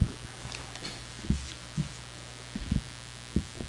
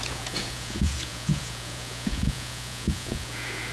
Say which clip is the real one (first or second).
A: first